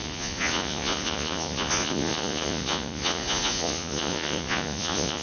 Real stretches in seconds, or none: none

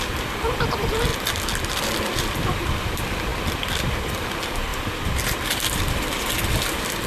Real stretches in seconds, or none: 1.1-1.8; 3.3-4.1